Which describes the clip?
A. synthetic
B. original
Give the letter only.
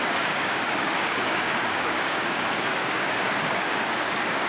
A